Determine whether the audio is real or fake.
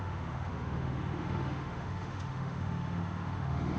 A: fake